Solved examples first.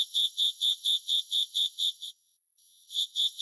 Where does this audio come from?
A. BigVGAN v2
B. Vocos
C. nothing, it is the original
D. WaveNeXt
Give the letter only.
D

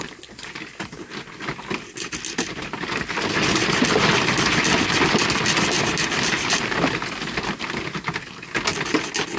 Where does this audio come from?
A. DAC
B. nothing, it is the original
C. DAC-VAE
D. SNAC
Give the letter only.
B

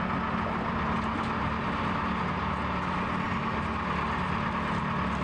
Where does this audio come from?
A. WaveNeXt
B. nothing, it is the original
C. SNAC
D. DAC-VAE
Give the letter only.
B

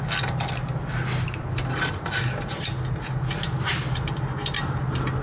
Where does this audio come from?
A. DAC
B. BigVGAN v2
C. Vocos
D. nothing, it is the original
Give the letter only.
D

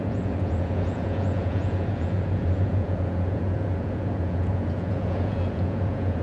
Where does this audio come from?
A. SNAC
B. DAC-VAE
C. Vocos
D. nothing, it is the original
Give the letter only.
C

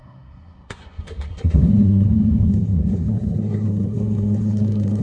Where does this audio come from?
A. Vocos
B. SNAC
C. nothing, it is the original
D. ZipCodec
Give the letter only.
B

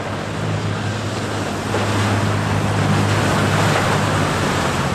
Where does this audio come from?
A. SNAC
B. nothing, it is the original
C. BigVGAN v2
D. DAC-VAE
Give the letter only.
B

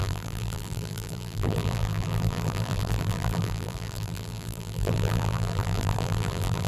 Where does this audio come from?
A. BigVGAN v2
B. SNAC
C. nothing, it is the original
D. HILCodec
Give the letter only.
A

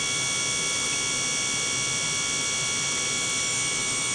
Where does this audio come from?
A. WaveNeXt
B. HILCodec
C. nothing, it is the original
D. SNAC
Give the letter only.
C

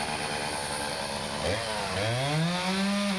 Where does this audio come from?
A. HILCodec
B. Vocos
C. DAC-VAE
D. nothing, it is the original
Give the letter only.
D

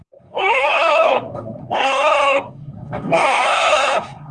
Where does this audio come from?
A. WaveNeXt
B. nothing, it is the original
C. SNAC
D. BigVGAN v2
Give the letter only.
C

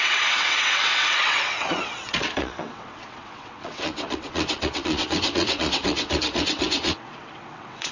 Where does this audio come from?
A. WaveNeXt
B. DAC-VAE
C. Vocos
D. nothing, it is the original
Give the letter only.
A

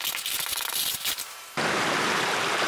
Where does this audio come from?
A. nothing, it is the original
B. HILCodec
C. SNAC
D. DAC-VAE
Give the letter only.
A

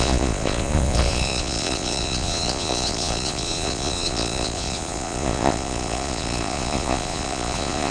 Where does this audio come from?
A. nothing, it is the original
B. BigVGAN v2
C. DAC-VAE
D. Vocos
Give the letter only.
D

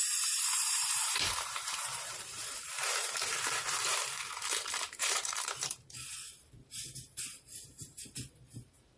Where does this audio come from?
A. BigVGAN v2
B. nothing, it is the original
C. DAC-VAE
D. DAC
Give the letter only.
A